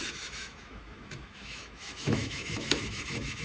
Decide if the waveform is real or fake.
fake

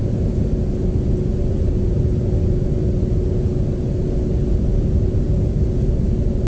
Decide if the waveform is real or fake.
real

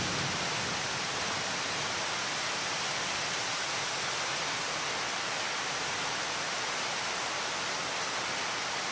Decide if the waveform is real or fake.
real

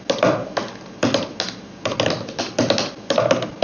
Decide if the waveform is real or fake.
real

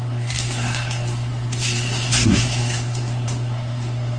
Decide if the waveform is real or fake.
fake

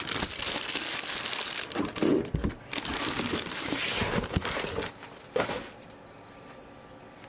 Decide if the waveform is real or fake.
real